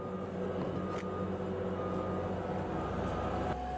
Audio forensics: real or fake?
real